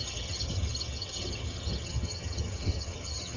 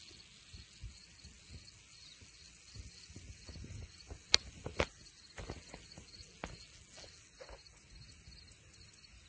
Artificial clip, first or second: first